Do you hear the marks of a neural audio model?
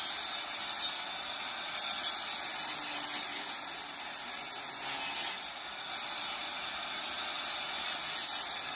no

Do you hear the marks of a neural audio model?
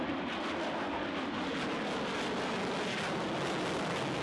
no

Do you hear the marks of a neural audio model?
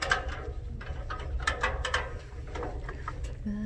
no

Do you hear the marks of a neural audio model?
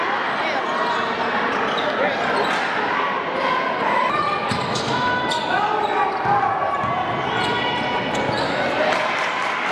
no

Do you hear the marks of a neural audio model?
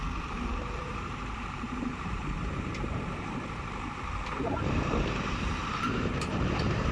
yes